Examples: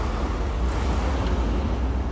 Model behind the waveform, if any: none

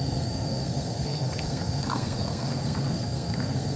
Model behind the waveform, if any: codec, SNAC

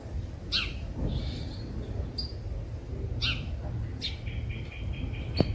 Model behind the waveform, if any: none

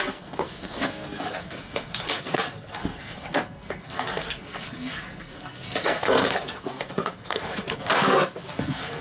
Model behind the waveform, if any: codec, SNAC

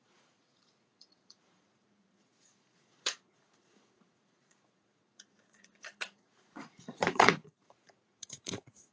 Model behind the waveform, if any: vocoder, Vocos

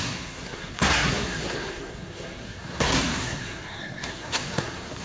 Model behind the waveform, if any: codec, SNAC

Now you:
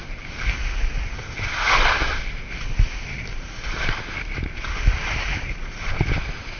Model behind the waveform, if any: none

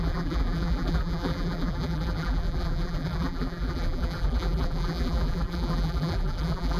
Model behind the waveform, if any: vocoder, BigVGAN v2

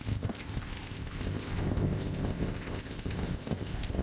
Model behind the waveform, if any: codec, ZipCodec